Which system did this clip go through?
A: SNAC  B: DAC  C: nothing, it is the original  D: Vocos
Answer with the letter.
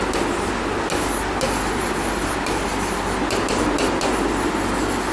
C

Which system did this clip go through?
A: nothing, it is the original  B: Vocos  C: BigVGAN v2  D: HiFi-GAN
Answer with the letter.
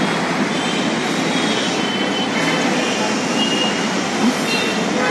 A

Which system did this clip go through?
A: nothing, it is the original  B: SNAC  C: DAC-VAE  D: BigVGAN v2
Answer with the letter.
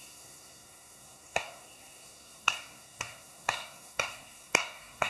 B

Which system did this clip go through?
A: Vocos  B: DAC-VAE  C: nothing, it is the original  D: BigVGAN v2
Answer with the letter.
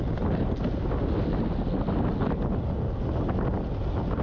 C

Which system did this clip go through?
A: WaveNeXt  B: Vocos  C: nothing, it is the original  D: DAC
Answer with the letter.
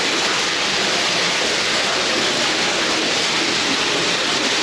C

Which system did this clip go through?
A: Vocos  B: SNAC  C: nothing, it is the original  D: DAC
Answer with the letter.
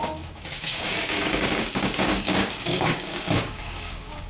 D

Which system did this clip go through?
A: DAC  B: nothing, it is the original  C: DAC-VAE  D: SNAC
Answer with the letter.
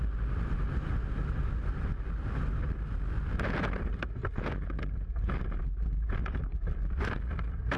B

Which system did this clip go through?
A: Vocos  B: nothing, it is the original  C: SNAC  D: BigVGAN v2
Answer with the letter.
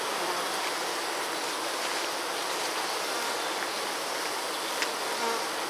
B